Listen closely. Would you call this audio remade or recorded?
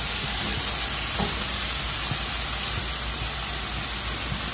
recorded